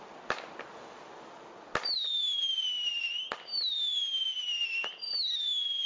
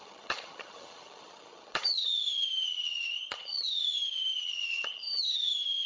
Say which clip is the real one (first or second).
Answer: first